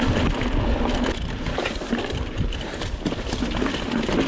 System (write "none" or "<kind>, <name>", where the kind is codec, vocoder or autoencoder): none